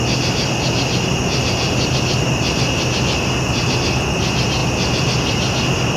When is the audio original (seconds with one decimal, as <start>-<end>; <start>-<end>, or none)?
0.0-6.0